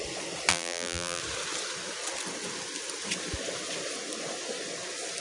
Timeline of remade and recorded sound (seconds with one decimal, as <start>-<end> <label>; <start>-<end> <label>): 0.0-0.5 recorded; 0.5-1.2 remade; 1.2-5.2 recorded